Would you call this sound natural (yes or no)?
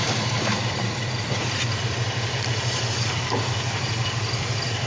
no